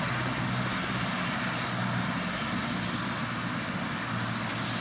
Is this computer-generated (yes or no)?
no